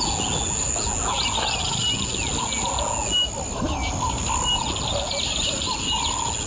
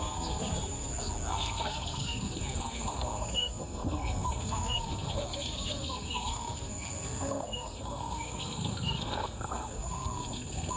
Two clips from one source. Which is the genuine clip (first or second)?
first